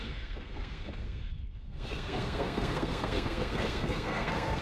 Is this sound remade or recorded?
remade